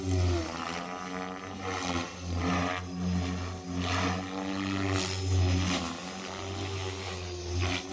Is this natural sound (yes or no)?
yes